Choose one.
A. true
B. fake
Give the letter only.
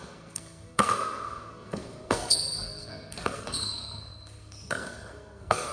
B